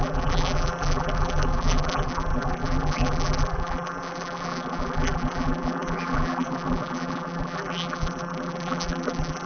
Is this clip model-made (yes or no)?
yes